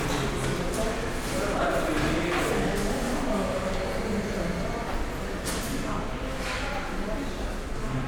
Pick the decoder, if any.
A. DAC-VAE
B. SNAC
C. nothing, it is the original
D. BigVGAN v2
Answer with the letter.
C